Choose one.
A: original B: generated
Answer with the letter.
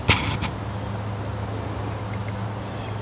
A